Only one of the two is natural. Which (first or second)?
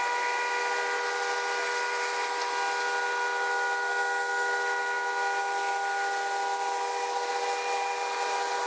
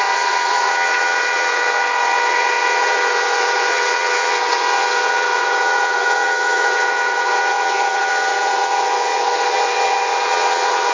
first